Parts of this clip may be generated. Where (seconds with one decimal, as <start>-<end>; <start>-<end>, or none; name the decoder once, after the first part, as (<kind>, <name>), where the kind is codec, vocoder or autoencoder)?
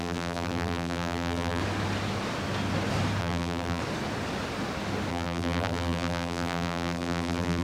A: 0.0-1.6 (vocoder, BigVGAN v2); 3.2-3.8; 5.1-7.6